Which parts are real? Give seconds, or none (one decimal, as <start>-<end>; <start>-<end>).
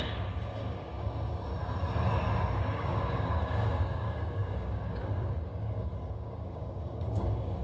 1.5-2.6